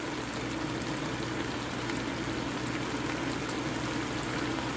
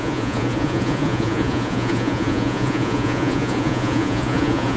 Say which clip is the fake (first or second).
second